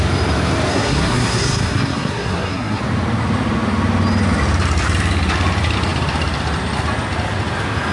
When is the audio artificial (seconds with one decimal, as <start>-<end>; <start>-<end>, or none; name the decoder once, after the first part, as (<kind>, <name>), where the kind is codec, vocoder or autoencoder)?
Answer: 0.7-2.8 (codec, SNAC)